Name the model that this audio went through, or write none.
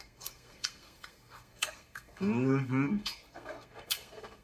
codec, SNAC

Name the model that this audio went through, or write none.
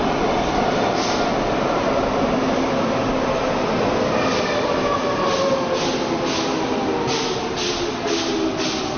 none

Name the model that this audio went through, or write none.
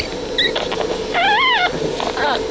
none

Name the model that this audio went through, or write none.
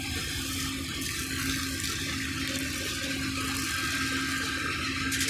none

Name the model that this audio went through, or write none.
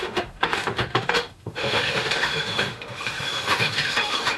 autoencoder, DAC-VAE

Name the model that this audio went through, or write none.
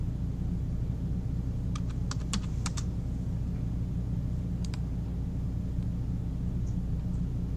none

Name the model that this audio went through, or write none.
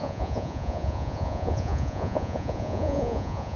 vocoder, Vocos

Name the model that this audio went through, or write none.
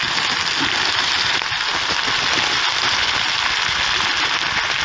none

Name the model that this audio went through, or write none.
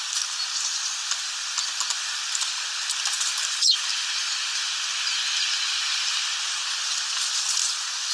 none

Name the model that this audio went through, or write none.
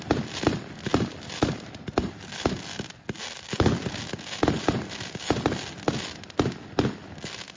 none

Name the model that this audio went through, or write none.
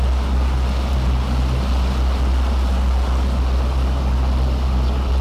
none